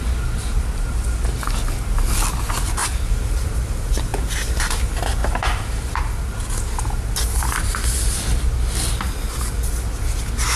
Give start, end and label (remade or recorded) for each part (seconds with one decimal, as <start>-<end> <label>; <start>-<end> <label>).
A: 0.0-2.8 recorded; 2.8-3.5 remade; 3.5-4.1 recorded; 4.1-4.8 remade; 4.8-5.2 recorded; 5.2-6.0 remade; 6.0-10.6 recorded